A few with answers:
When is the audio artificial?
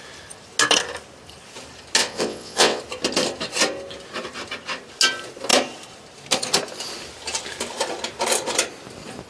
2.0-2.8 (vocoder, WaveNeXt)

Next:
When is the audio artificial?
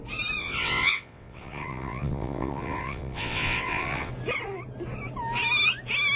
0.4-4.1 (vocoder, WaveNeXt)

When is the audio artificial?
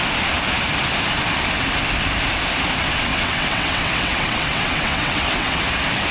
3.1-5.6 (vocoder, WaveNeXt)